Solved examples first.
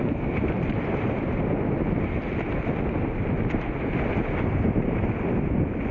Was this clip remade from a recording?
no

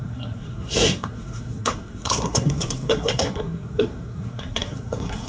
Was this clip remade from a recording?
yes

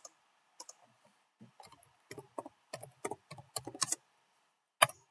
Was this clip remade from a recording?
no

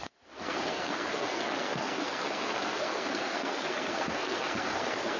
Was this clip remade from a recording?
yes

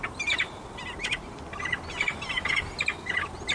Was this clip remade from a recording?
no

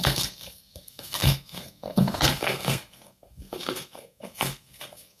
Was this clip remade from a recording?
yes